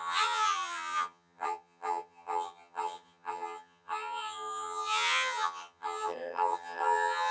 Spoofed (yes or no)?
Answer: yes